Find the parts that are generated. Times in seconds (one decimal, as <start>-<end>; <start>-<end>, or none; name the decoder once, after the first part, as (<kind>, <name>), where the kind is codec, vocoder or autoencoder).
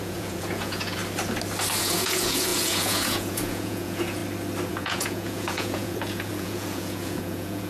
0.0-1.0 (vocoder, Vocos); 1.8-4.2; 4.7-7.7